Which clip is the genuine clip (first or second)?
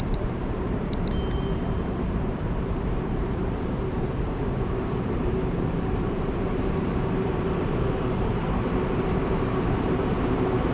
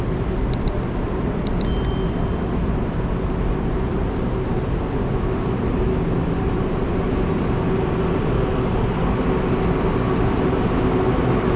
second